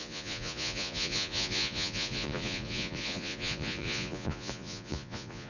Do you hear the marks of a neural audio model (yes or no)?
yes